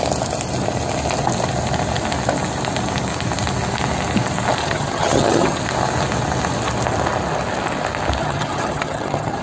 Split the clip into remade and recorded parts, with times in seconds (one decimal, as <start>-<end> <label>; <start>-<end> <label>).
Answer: 0.0-4.6 recorded; 4.6-5.6 remade; 5.6-8.2 recorded; 8.2-9.4 remade